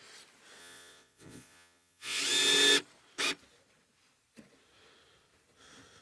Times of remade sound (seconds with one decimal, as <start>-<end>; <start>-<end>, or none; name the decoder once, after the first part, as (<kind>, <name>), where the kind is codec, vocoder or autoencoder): 0.6-2.2 (vocoder, Vocos)